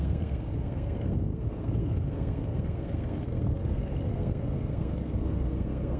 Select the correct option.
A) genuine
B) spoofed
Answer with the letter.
B